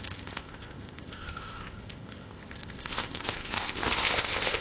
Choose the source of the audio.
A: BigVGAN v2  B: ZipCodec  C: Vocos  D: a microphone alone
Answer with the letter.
B